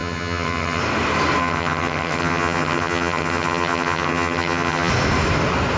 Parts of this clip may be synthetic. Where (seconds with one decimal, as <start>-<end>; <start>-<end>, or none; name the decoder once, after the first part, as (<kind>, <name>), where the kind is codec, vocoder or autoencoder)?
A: 0.0-0.8 (vocoder, HiFi-GAN); 1.4-4.9